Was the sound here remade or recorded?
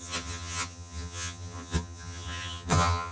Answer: remade